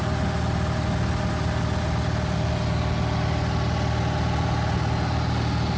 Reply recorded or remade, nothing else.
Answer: recorded